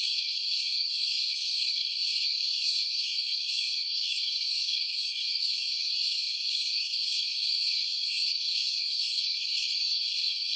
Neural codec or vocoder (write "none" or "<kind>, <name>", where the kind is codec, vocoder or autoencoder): codec, DAC